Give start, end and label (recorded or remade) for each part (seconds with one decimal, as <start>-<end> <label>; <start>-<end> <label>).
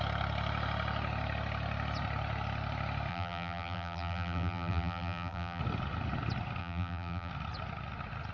0.0-3.1 recorded; 3.1-5.6 remade; 5.6-6.6 recorded; 6.6-7.3 remade; 7.3-8.3 recorded